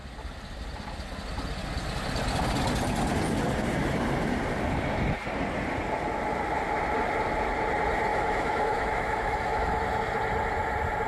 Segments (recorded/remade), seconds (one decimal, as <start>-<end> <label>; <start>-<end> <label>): 0.0-8.1 recorded; 8.1-9.8 remade; 9.8-11.1 recorded